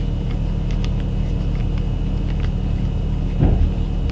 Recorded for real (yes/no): yes